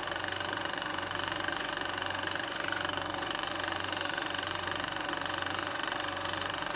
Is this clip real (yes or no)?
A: no